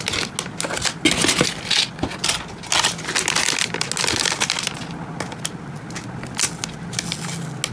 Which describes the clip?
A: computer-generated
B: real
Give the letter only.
B